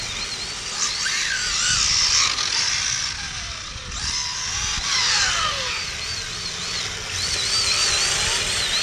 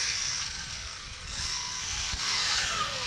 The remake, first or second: second